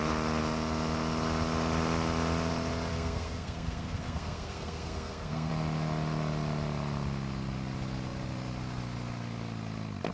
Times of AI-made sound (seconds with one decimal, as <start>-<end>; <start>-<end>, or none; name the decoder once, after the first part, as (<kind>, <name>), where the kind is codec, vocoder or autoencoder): 2.9-5.5 (codec, SNAC)